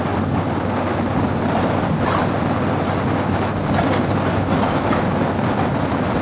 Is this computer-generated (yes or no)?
no